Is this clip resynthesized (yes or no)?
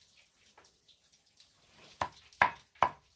no